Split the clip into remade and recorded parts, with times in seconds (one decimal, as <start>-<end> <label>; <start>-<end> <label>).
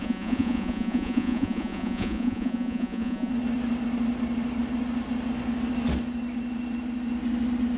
0.0-3.3 remade; 3.3-7.8 recorded